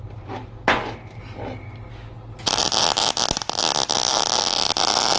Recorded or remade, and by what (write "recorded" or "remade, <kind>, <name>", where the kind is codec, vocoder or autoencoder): recorded